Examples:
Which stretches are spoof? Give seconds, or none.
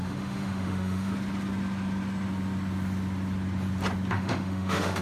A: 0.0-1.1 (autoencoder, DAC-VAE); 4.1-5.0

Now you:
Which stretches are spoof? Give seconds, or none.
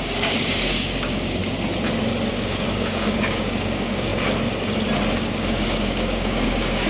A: 0.0-1.4 (codec, DAC); 2.3-4.1; 5.1-6.9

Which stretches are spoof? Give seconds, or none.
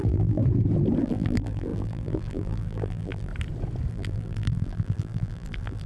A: 0.0-0.4 (vocoder, BigVGAN v2); 1.0-3.3; 3.9-5.9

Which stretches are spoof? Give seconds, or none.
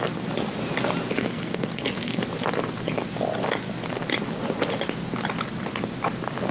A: 1.2-2.2 (codec, SNAC)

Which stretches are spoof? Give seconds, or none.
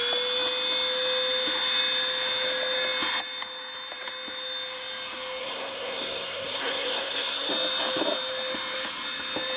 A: 5.4-7.5 (codec, SNAC)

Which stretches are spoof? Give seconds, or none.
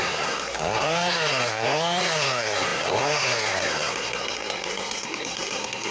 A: 0.0-5.9 (codec, SNAC)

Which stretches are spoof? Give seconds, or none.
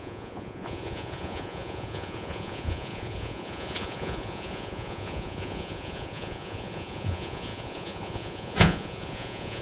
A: 0.0-9.6 (vocoder, Vocos)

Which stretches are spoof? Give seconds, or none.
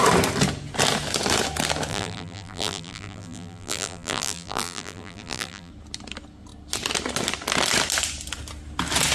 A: 1.9-5.7 (vocoder, BigVGAN v2)